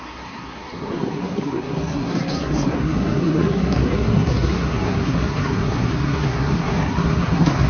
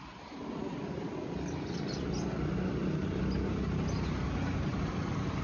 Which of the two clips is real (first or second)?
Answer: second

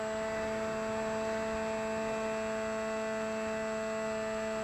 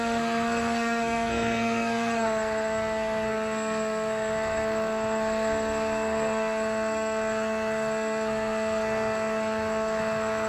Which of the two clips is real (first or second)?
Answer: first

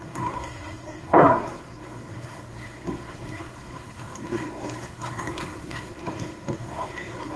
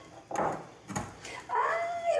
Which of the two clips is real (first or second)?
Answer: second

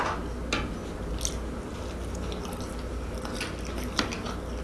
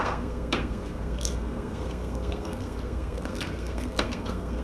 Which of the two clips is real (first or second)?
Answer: first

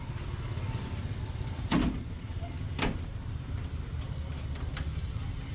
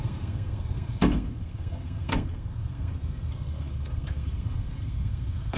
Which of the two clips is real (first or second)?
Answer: first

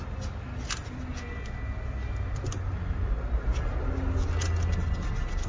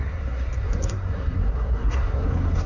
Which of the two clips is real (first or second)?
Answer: first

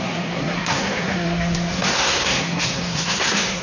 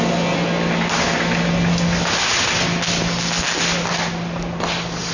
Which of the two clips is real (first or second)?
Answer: second